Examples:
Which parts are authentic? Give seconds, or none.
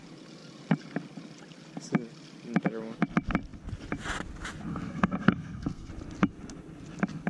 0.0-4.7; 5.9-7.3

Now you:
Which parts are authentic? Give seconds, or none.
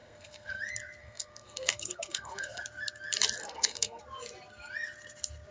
0.6-1.0; 2.6-3.4; 4.0-5.5